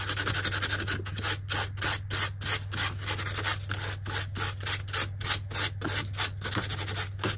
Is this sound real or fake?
real